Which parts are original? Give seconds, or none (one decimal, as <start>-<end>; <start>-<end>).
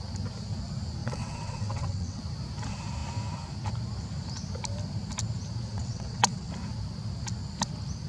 0.0-1.0; 2.2-5.7; 6.5-8.1